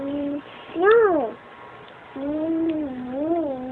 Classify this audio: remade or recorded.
recorded